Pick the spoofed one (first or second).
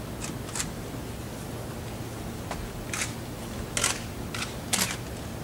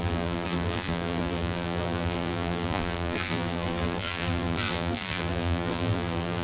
second